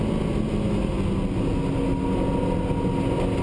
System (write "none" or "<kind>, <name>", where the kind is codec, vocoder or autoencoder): none